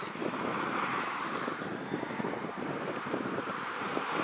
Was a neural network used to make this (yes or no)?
yes